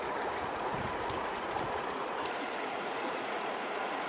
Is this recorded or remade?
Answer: remade